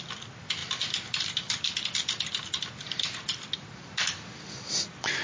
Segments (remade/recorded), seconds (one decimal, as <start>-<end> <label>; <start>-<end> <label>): 0.0-5.2 recorded